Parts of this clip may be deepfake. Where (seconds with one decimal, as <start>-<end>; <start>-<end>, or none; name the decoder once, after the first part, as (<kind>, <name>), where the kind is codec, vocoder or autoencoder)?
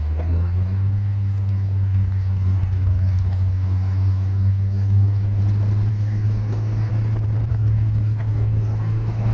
0.0-5.4 (codec, DAC); 5.9-6.9; 7.5-9.3